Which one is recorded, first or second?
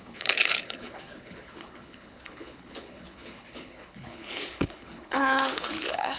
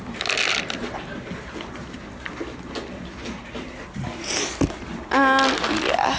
second